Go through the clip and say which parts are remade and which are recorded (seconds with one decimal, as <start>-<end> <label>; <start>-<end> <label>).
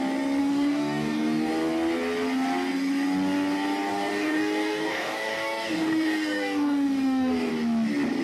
0.0-0.4 recorded; 0.4-1.5 remade; 1.5-3.9 recorded; 3.9-7.5 remade; 7.5-8.2 recorded